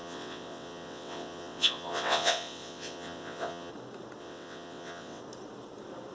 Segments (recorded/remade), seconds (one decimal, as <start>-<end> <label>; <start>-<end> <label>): 0.0-3.7 remade; 3.7-4.2 recorded; 4.2-5.2 remade; 5.2-6.1 recorded